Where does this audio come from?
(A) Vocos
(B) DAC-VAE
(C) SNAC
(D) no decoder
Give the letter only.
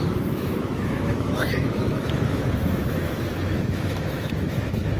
B